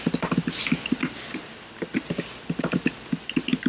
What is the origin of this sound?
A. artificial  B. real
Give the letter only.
B